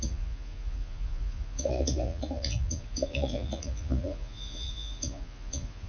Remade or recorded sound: remade